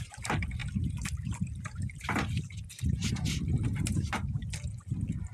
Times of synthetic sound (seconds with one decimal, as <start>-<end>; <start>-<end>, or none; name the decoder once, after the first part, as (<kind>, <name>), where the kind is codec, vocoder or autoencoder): 0.0-4.4 (vocoder, BigVGAN v2)